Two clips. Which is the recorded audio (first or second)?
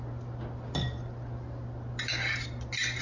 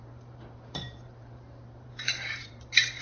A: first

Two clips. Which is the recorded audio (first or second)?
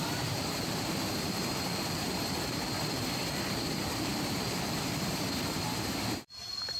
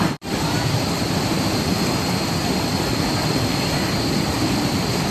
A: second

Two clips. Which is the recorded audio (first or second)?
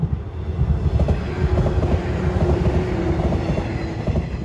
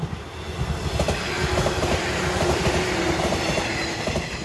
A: first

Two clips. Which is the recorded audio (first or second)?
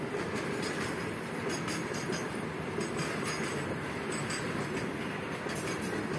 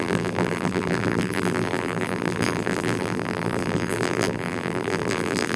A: first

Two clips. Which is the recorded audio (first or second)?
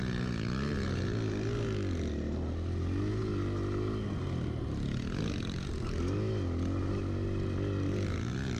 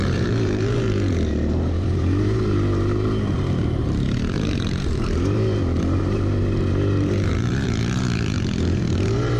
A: first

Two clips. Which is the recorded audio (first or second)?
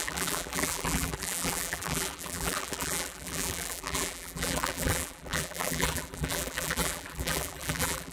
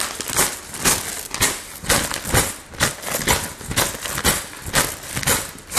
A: second